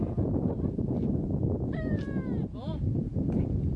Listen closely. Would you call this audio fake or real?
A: fake